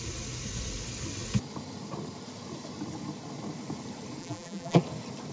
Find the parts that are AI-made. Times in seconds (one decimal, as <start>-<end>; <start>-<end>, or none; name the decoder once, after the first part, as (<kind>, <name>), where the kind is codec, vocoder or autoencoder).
4.2-4.8 (vocoder, BigVGAN v2)